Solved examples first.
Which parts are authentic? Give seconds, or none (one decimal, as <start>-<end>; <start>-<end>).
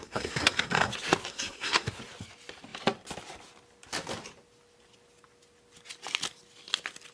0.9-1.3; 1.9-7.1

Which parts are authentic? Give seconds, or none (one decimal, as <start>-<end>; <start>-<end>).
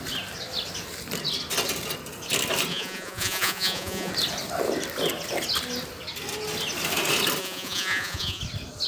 0.0-2.7; 4.1-7.4; 8.4-8.9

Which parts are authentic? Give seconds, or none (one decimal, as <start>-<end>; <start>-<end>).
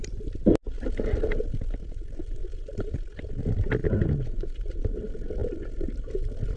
0.0-3.8; 4.6-6.6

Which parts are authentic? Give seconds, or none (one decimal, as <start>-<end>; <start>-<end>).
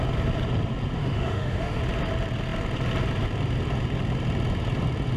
0.0-1.0; 1.8-5.2